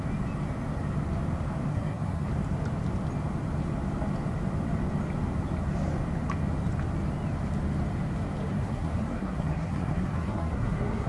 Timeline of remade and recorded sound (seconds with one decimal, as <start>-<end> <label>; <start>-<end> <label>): 0.0-1.7 recorded; 1.7-2.3 remade; 2.3-8.5 recorded; 8.5-11.1 remade